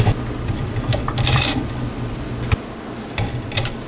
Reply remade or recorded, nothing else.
recorded